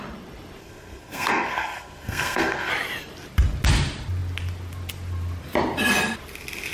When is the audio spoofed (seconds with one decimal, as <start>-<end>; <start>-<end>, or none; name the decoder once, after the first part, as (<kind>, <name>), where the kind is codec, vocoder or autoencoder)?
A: 0.6-2.7 (codec, SNAC)